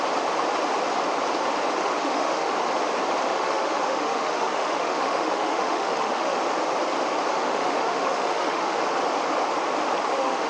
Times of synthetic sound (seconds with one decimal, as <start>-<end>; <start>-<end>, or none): 1.8-2.5; 3.2-6.4; 7.3-8.8; 10.0-10.5